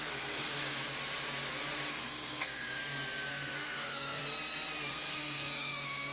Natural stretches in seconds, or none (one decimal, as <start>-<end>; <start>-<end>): 0.5-1.9; 2.8-3.3; 4.2-4.9